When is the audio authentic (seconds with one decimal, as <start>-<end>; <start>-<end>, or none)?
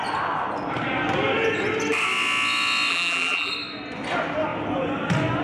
0.0-2.9; 3.5-5.4